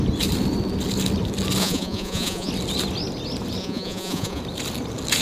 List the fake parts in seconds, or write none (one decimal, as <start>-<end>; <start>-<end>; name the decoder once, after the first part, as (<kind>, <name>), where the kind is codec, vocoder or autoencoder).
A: 1.6-2.5 (vocoder, Vocos); 3.6-4.4